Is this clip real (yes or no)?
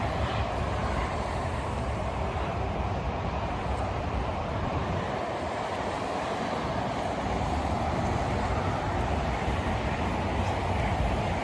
no